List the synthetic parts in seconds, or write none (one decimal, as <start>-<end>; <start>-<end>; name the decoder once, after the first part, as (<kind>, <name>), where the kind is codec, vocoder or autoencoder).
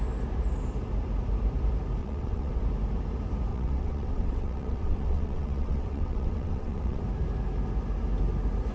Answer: 2.0-2.6 (vocoder, WaveNeXt); 3.5-7.0